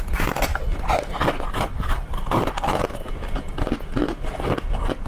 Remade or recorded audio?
recorded